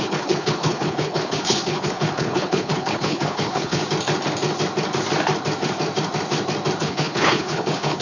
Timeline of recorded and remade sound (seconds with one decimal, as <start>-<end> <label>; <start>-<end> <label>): 0.0-3.8 remade; 3.8-6.8 recorded; 6.8-8.0 remade